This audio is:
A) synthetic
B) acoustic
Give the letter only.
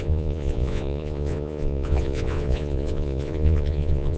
A